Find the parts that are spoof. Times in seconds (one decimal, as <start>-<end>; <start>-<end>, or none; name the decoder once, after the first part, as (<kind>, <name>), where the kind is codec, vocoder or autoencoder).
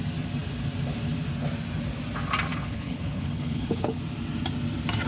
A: 2.5-4.0 (codec, HILCodec)